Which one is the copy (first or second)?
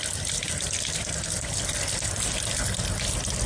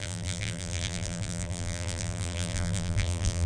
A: second